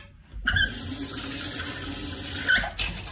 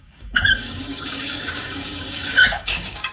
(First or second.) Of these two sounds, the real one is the first